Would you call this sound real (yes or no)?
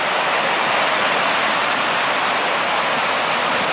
yes